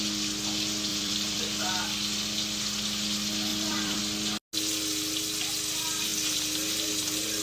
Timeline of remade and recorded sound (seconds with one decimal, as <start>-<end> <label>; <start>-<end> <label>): 0.0-0.9 recorded; 0.9-1.4 remade; 1.4-3.5 recorded; 3.5-4.0 remade; 4.0-7.4 recorded